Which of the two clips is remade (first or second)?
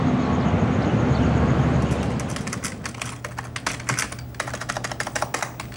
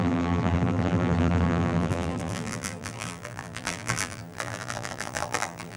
second